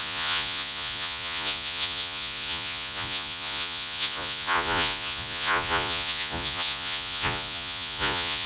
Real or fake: fake